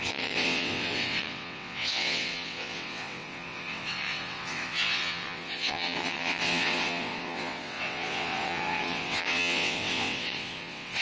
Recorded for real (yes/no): no